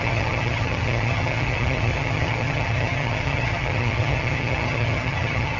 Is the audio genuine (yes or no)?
no